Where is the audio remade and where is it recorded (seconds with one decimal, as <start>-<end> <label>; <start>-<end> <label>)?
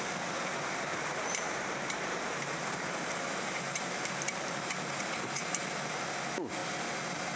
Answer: 0.0-0.9 recorded; 0.9-4.6 remade; 4.6-7.4 recorded